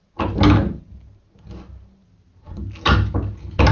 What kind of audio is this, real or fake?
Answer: real